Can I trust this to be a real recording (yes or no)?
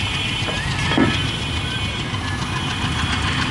yes